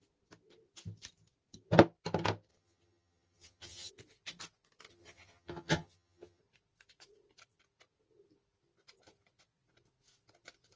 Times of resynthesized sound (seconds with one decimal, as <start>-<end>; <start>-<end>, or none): 2.5-3.9; 4.9-6.4